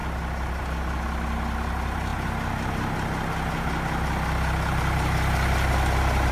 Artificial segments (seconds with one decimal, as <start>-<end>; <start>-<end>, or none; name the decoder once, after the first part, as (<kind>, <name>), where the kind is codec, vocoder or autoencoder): none